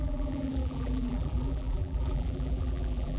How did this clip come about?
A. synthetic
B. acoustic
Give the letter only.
A